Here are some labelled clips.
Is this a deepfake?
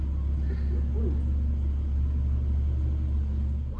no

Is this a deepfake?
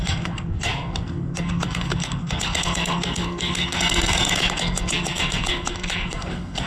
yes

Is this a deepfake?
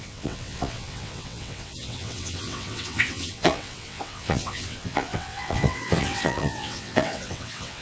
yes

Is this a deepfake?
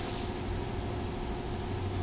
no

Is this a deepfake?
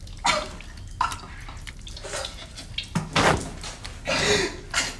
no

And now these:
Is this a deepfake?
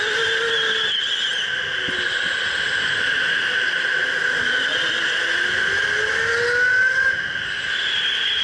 no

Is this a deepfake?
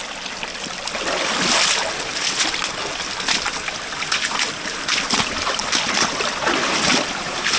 no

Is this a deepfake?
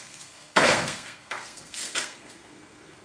yes